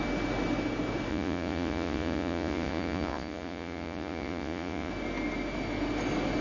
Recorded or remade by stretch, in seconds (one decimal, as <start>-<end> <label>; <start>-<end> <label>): 0.0-1.1 recorded; 1.1-4.9 remade; 4.9-6.4 recorded